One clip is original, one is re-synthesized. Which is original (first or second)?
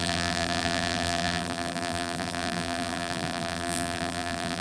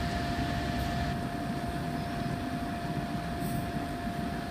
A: second